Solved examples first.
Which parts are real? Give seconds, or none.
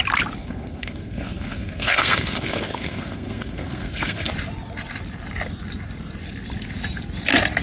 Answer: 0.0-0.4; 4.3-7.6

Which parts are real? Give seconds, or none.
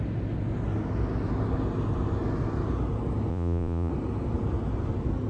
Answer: 0.0-3.3; 3.9-5.3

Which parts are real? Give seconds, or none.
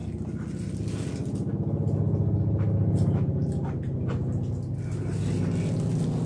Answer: 0.0-6.3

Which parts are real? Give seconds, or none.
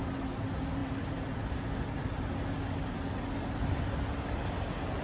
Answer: 0.0-5.0